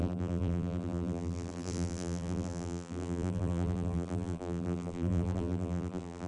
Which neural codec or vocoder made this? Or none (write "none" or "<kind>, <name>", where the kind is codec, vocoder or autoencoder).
vocoder, BigVGAN v2